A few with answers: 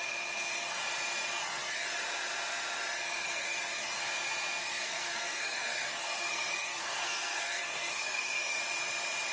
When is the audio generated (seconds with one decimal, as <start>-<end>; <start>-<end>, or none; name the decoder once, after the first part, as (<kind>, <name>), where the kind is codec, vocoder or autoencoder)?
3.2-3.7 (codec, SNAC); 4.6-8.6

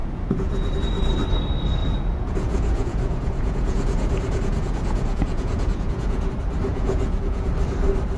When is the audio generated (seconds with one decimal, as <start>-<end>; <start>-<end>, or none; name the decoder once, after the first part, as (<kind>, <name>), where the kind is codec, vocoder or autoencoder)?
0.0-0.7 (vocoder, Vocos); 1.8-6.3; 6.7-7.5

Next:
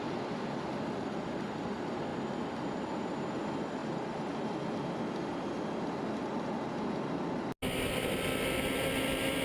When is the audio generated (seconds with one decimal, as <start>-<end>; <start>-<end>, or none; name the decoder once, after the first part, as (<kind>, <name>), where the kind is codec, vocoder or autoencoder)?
none